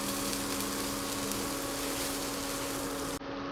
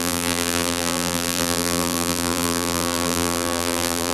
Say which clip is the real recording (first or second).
first